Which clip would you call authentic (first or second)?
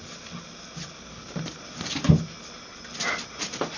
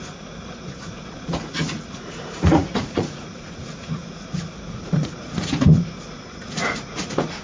first